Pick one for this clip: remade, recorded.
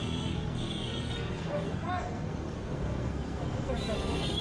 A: remade